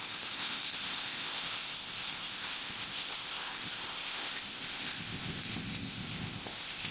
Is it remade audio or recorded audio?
remade